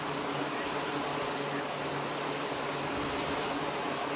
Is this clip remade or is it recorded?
recorded